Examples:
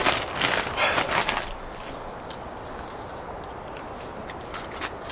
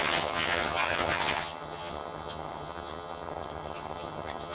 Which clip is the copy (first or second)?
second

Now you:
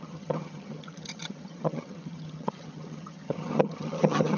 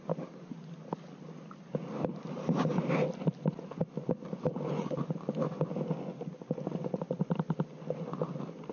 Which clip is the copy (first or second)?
first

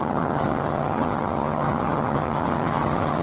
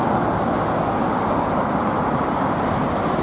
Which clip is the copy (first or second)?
first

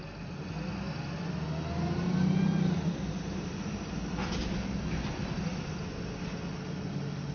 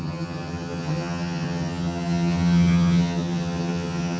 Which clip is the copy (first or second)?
second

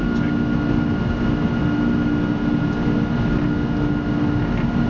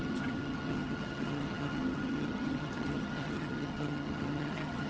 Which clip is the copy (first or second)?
second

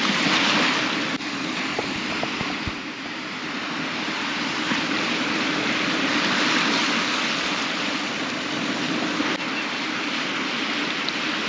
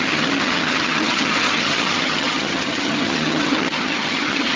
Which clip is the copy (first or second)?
second